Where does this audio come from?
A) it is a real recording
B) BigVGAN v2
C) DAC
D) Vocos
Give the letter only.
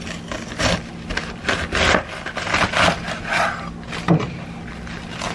A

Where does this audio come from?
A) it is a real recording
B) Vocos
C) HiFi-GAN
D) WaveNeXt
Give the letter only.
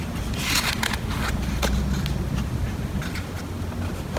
A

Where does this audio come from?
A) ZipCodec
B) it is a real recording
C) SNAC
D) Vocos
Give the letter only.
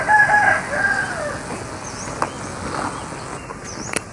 B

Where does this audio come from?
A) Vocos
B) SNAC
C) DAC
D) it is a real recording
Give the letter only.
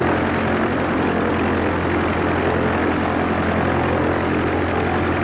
D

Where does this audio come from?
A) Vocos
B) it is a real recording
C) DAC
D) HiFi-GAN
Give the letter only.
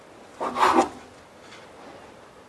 B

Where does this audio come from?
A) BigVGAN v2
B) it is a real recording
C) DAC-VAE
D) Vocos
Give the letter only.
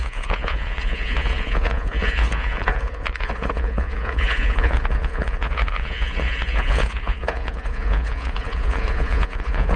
D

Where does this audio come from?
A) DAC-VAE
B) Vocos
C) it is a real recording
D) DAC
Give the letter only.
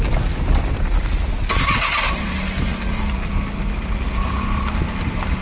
C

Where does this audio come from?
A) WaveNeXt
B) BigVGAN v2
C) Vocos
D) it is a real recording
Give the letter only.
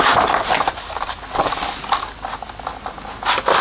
D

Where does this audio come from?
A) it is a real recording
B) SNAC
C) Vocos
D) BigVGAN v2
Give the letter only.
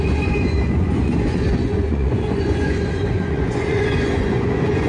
C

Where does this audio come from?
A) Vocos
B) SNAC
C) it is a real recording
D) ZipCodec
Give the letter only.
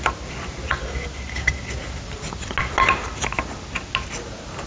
C